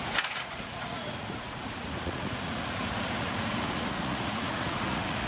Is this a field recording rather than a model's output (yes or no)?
no